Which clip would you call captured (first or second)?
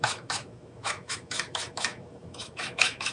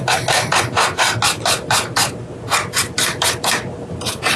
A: second